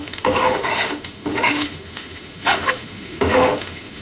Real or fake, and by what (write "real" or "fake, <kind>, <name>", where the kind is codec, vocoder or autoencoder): fake, autoencoder, DAC-VAE